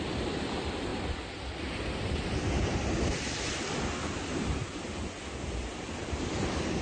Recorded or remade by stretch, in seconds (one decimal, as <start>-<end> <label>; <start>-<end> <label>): 0.0-0.9 remade; 0.9-3.5 recorded; 3.5-6.8 remade